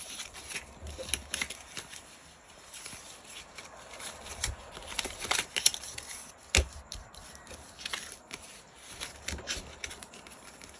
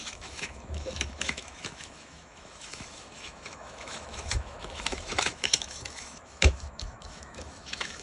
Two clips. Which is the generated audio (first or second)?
second